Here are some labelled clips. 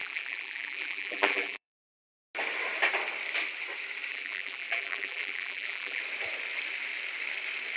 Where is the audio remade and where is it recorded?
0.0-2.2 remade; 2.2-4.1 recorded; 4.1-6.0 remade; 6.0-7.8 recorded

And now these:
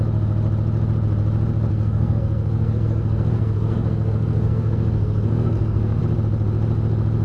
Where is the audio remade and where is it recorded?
0.0-1.7 recorded; 1.7-6.0 remade; 6.0-7.2 recorded

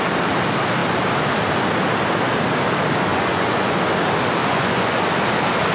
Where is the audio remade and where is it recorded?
0.0-3.1 recorded; 3.1-3.8 remade; 3.8-4.4 recorded; 4.4-5.0 remade; 5.0-5.7 recorded

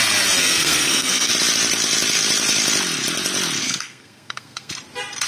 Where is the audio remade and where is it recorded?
0.0-0.4 recorded; 0.4-1.3 remade; 1.3-3.6 recorded; 3.6-4.7 remade; 4.7-5.3 recorded

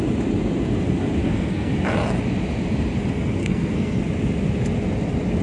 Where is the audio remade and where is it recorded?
0.0-1.2 recorded; 1.2-1.7 remade; 1.7-3.4 recorded; 3.4-4.0 remade; 4.0-5.4 recorded

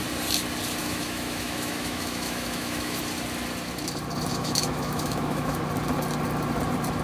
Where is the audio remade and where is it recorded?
0.0-0.8 recorded; 0.8-3.0 remade; 3.0-4.3 recorded; 4.3-5.6 remade; 5.6-7.0 recorded

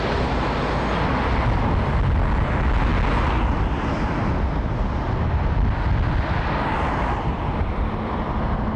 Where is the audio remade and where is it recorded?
0.0-8.8 recorded